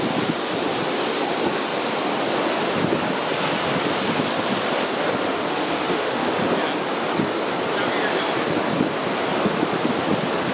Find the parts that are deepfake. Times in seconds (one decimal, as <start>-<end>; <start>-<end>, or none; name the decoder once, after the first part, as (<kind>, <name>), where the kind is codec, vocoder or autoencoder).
5.3-6.3 (autoencoder, DAC-VAE)